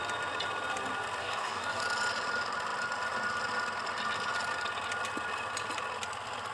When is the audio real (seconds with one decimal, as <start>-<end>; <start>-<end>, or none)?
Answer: 0.0-1.2; 1.8-6.5